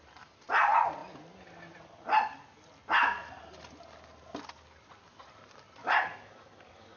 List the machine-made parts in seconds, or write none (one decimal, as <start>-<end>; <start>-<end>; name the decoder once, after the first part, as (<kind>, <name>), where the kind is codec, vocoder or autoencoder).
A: 5.8-7.0 (codec, DAC)